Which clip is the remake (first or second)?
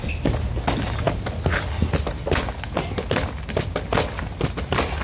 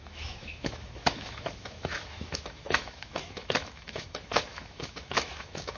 second